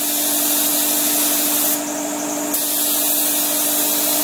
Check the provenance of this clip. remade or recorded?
recorded